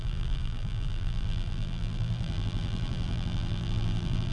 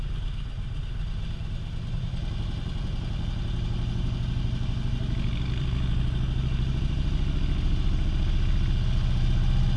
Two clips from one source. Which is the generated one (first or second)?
first